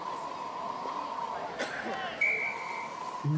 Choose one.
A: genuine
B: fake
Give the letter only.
A